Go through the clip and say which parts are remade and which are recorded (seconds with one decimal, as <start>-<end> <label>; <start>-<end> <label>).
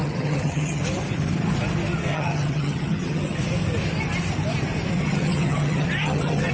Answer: 0.0-0.8 remade; 0.8-2.1 recorded; 2.1-3.4 remade; 3.4-5.0 recorded; 5.0-6.5 remade